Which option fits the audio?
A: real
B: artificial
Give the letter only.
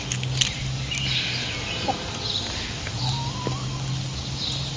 A